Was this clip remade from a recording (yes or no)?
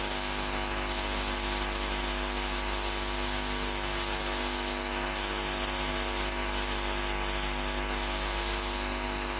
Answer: no